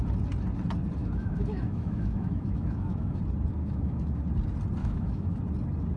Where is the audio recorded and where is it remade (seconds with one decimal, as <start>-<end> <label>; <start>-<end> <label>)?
0.0-1.0 recorded; 1.0-3.2 remade; 3.2-3.6 recorded; 3.6-4.2 remade; 4.2-4.8 recorded; 4.8-5.4 remade; 5.4-6.0 recorded